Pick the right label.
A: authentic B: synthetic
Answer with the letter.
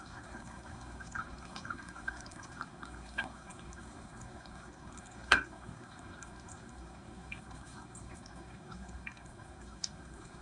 B